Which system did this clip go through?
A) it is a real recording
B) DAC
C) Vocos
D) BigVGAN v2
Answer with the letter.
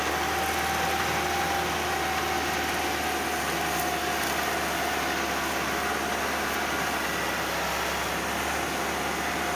A